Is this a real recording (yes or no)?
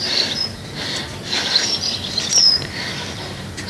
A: yes